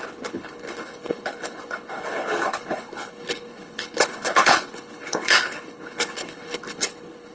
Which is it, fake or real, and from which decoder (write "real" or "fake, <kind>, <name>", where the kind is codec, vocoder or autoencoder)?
fake, codec, HILCodec